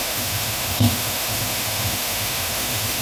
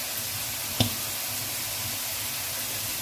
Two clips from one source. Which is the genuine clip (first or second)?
second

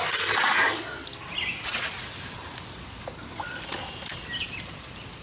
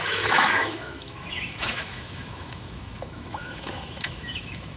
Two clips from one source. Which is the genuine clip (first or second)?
first